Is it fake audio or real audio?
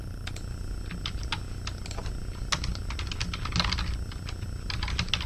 real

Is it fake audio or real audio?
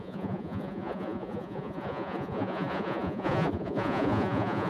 fake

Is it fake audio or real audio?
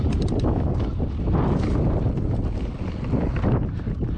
real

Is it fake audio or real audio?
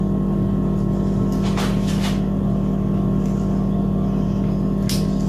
real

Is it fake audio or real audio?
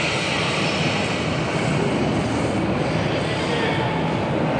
real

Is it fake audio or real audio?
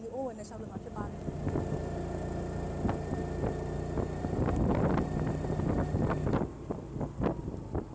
real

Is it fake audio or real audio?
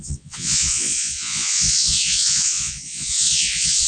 fake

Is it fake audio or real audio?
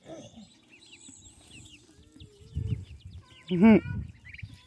real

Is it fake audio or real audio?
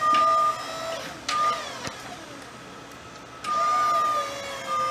real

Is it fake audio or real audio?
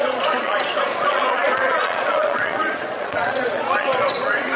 fake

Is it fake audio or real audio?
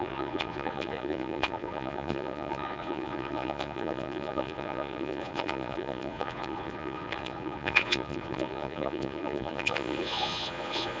fake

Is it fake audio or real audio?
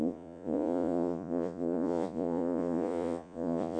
fake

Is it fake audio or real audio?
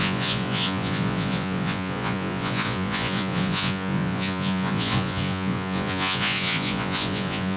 fake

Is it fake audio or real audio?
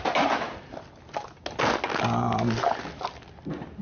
real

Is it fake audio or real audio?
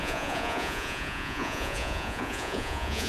fake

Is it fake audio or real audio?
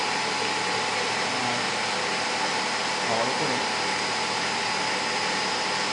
real